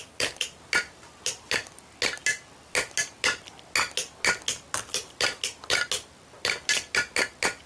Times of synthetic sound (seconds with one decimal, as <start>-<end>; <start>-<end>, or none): none